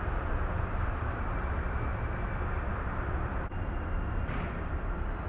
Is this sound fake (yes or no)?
no